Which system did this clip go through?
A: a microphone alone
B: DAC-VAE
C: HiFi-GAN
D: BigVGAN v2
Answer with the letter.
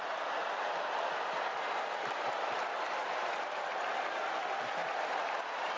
D